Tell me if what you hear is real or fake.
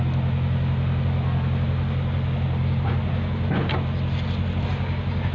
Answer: real